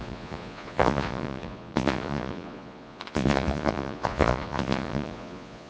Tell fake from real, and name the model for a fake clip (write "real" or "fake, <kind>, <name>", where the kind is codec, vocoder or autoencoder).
fake, vocoder, Vocos